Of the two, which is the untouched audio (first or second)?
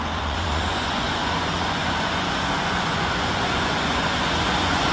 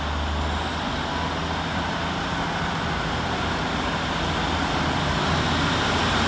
second